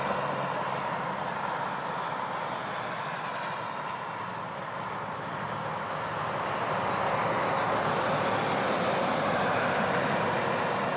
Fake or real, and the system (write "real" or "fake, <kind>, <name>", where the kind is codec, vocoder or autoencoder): real